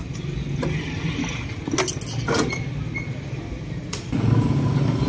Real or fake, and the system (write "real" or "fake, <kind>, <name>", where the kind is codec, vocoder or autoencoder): real